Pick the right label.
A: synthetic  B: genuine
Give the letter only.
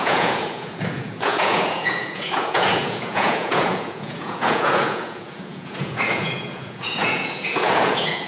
A